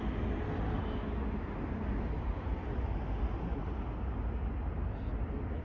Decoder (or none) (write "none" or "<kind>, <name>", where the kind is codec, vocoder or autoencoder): none